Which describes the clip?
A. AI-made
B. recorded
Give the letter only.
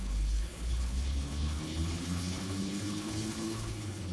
A